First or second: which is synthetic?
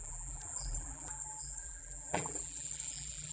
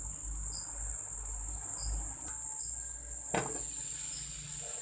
first